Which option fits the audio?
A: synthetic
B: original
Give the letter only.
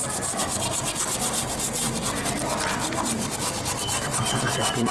B